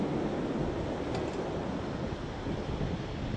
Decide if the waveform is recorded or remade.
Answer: recorded